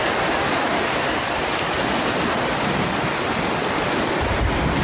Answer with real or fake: real